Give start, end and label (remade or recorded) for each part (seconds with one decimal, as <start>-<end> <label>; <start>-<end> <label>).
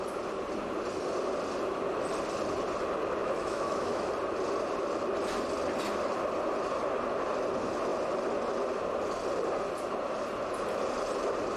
0.0-3.2 recorded; 3.2-4.1 remade; 4.1-11.6 recorded